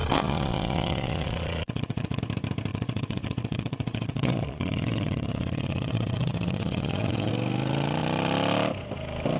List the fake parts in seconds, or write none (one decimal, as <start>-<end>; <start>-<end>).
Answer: 0.0-2.2; 2.7-7.3